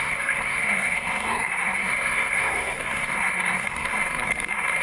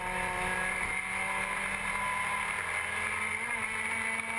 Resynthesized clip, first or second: first